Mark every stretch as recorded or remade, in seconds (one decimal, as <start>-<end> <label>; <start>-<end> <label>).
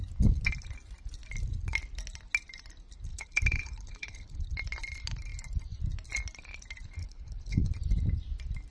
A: 0.0-3.1 recorded; 3.1-4.5 remade; 4.5-7.0 recorded; 7.0-7.7 remade; 7.7-8.7 recorded